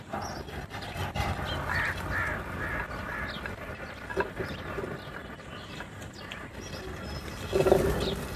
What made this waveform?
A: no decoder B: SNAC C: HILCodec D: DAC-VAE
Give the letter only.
A